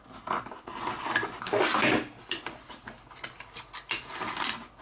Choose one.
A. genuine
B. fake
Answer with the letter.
A